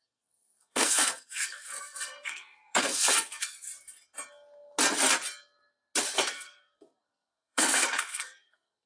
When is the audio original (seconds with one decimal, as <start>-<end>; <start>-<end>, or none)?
3.7-6.0